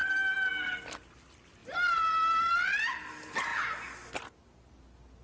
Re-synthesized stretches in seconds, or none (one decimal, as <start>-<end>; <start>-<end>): none